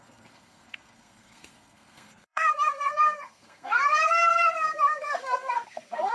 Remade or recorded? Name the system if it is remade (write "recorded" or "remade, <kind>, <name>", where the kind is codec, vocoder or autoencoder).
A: remade, codec, SNAC